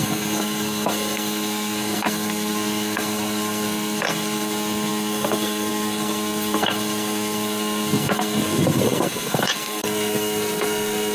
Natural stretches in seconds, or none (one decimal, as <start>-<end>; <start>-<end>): none

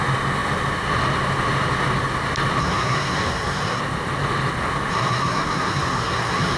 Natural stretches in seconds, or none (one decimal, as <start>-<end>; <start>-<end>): 0.0-2.6; 3.8-4.9

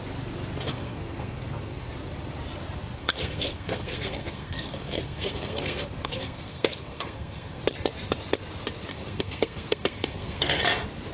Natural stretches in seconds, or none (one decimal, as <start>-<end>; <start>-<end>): 0.0-0.7; 1.9-3.0; 7.6-8.9; 10.6-11.1